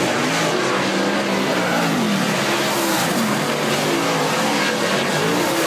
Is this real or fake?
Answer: real